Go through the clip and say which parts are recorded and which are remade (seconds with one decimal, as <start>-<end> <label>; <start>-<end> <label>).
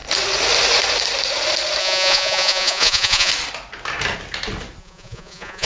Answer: 0.0-1.8 recorded; 1.8-3.3 remade; 3.3-4.8 recorded; 4.8-5.6 remade